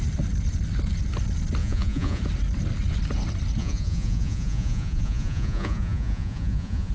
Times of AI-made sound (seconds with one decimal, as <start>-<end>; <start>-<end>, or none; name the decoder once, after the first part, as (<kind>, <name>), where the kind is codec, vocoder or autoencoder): 1.6-2.2 (vocoder, Vocos); 3.6-6.9